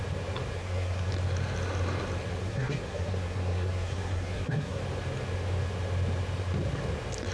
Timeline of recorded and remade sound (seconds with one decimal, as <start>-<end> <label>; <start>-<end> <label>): 0.0-0.6 recorded; 0.6-1.1 remade; 1.1-2.4 recorded; 2.4-4.8 remade; 4.8-7.3 recorded